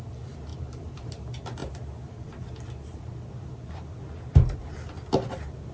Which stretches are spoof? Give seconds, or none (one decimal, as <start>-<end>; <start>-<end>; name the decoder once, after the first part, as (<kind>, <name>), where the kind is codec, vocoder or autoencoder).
0.5-1.1 (vocoder, BigVGAN v2)